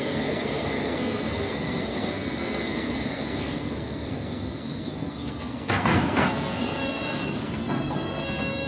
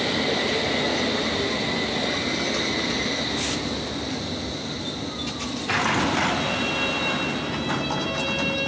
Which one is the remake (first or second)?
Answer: first